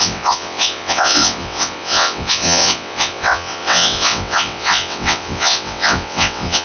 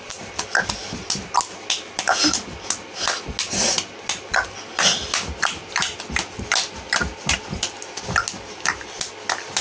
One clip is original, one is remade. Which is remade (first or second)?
first